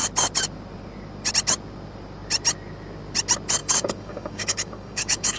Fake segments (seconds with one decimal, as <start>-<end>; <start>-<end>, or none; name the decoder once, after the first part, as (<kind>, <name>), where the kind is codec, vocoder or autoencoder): 3.6-5.4 (codec, DAC)